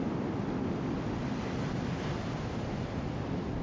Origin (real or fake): real